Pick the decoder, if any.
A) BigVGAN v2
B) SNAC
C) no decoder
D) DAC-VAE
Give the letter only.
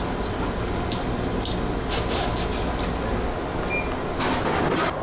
C